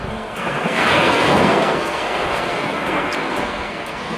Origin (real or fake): fake